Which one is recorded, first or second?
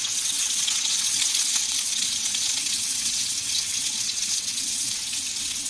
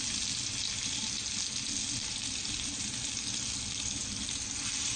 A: second